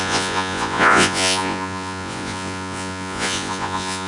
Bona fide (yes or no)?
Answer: no